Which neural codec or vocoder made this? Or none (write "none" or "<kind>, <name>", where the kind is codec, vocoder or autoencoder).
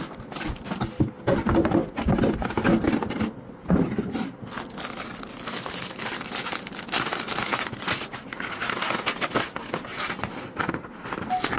none